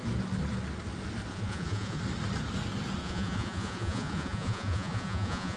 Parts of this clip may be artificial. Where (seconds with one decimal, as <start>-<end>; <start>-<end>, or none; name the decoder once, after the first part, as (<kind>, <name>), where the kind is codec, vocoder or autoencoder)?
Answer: 1.3-2.0 (vocoder, Vocos); 3.0-5.6